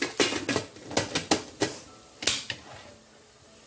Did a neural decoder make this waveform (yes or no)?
no